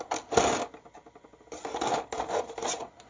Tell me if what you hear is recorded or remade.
recorded